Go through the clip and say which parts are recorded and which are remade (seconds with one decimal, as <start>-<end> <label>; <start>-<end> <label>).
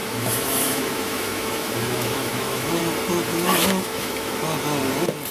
0.0-2.8 remade; 2.8-3.3 recorded; 3.3-4.4 remade; 4.4-5.3 recorded